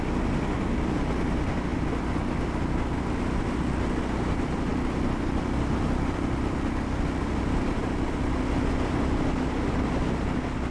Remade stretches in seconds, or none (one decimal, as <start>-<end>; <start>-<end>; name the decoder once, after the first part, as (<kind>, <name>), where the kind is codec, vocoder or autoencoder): none